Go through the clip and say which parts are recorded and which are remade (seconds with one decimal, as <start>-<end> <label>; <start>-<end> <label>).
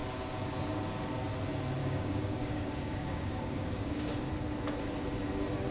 0.0-1.8 recorded; 1.8-4.1 remade; 4.1-5.7 recorded